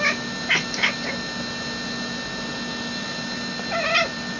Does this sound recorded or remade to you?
recorded